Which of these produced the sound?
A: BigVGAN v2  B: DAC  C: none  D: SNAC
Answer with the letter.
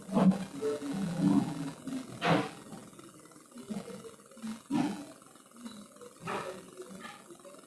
C